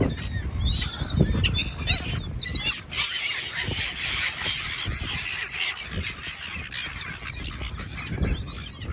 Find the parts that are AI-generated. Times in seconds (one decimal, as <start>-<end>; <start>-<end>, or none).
none